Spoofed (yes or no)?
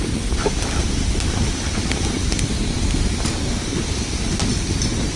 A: no